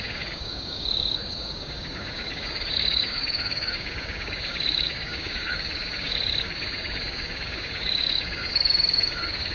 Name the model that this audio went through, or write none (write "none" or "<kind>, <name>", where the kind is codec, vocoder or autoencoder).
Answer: codec, DAC